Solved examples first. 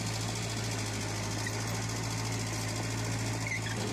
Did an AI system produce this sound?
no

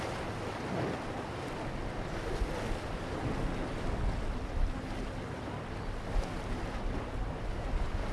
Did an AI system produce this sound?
no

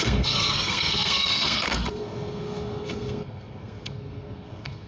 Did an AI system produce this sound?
yes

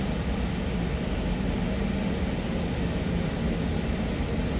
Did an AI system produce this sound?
no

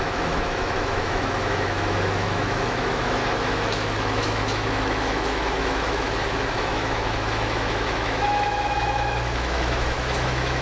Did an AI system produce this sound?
yes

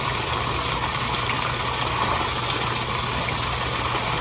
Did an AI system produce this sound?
no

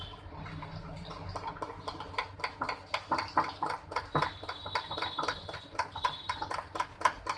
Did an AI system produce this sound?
no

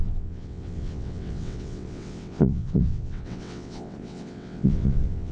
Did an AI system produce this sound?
yes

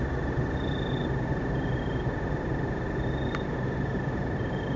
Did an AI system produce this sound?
no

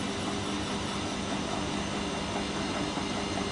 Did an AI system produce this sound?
no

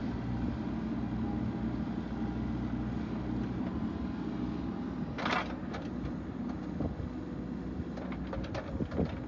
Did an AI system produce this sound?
no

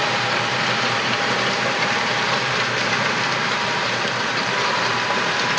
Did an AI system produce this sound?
yes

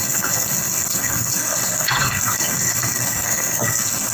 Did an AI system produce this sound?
yes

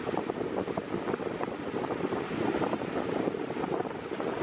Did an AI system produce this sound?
no